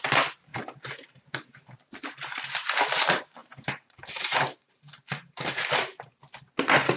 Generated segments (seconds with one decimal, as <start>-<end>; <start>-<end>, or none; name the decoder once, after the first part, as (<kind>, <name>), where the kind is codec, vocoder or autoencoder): 0.5-1.7 (vocoder, BigVGAN v2); 3.4-6.2